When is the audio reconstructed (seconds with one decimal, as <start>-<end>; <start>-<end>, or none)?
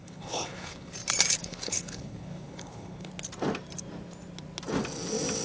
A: 0.0-0.9; 1.4-3.1